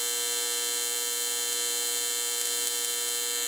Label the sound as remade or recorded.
recorded